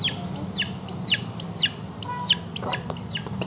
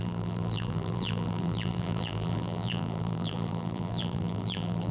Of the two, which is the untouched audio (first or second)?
first